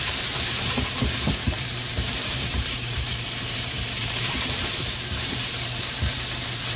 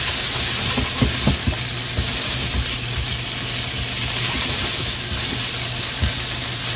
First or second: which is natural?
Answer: second